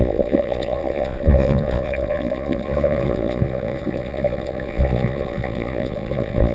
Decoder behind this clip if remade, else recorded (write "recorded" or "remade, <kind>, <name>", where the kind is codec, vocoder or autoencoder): remade, vocoder, Vocos